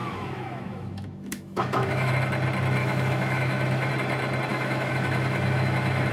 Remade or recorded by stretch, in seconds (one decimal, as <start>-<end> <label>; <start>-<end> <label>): 0.0-2.1 remade; 2.1-2.8 recorded; 2.8-3.9 remade; 3.9-4.5 recorded; 4.5-6.1 remade

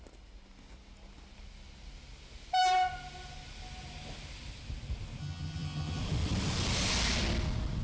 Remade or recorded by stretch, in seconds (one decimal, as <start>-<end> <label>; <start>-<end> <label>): 0.0-5.2 recorded; 5.2-6.0 remade; 6.0-7.8 recorded

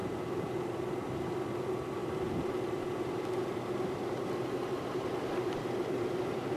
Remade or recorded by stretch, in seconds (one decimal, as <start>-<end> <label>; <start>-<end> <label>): 0.0-6.6 remade

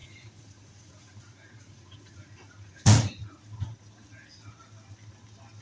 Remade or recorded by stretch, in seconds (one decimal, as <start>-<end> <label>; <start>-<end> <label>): 0.0-3.4 remade; 3.4-5.6 recorded

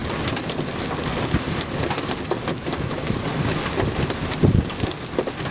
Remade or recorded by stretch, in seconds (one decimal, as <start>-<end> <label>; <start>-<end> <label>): 0.0-5.5 recorded